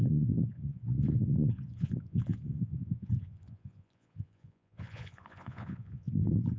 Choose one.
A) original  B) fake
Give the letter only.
B